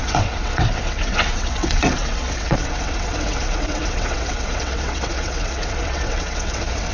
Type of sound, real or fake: fake